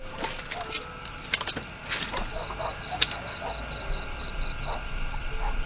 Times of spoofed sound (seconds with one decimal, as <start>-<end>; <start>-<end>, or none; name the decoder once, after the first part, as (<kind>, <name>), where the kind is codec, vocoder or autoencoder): none